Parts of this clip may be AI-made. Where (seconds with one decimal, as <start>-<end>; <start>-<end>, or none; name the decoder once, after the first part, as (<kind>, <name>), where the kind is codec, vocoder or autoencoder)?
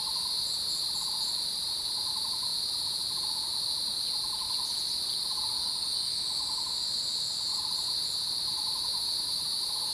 0.0-2.5 (vocoder, BigVGAN v2); 7.5-9.9